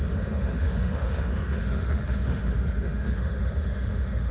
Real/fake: fake